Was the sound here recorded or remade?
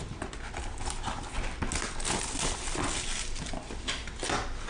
recorded